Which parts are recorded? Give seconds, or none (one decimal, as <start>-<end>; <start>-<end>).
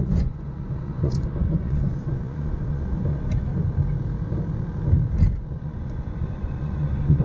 3.5-5.4